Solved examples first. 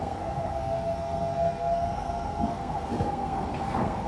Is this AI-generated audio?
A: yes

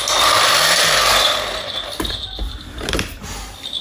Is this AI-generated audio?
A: no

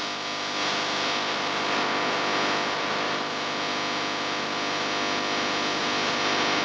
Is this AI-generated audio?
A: no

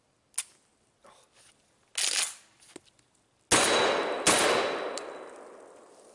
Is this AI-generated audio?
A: no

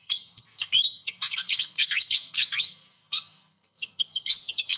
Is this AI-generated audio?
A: yes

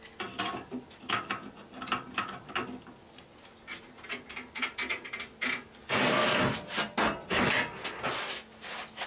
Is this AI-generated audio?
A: no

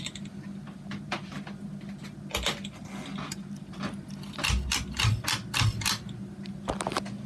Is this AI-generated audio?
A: no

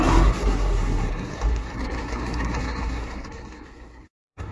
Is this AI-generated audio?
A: yes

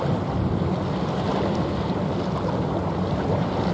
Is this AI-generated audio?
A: no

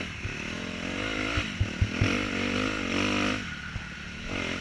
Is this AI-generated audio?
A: no